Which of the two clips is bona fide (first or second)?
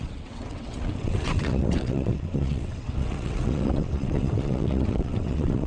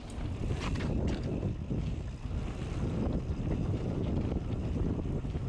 second